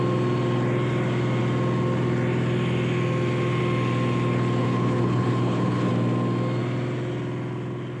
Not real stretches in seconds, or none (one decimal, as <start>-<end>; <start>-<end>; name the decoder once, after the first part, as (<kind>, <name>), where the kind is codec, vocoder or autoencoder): 4.6-5.9 (codec, HILCodec)